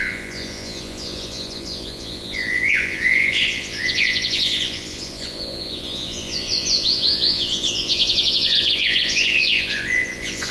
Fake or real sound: fake